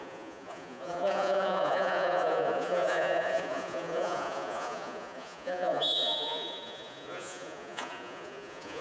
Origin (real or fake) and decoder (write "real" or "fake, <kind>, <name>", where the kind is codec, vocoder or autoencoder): fake, vocoder, Vocos